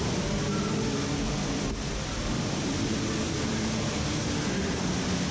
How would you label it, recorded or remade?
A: recorded